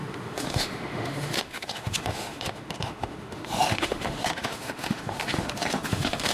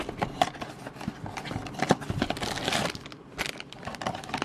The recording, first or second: second